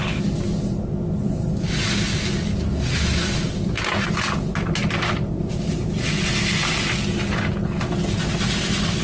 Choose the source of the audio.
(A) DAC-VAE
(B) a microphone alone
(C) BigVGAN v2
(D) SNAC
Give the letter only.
B